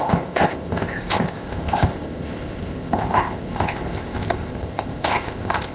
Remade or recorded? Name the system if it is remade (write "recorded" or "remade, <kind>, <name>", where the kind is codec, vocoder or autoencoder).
remade, codec, ZipCodec